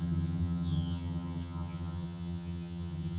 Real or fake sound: fake